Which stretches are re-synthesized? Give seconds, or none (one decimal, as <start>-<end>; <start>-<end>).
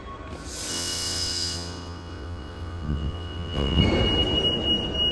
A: 0.7-3.8